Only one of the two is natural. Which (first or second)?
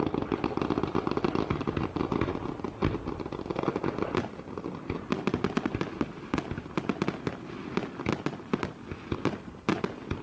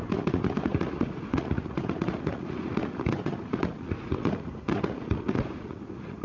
first